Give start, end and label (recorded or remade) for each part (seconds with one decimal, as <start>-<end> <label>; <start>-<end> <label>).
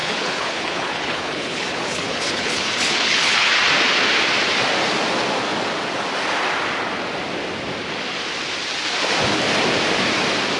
0.0-3.5 remade; 3.5-10.6 recorded